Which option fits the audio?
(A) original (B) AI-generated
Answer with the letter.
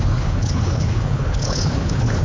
B